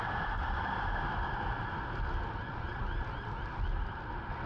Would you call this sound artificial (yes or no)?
no